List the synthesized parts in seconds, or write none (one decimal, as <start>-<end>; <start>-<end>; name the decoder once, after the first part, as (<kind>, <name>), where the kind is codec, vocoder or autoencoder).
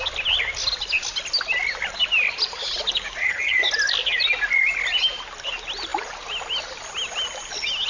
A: 3.2-3.7 (vocoder, HiFi-GAN)